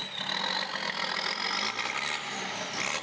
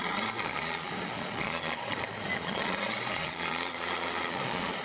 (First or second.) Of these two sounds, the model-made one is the second